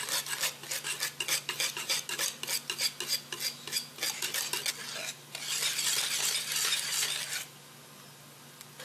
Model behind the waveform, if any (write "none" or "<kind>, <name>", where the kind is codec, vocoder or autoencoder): none